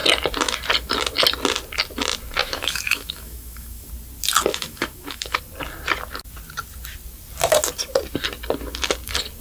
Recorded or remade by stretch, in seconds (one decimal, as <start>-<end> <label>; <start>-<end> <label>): 0.0-2.4 recorded; 2.4-3.9 remade; 3.9-4.5 recorded; 4.5-5.4 remade; 5.4-9.4 recorded